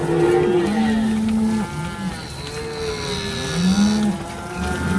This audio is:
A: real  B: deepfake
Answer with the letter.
A